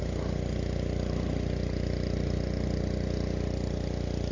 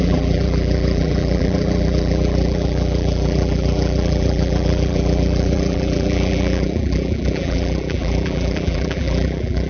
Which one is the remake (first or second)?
second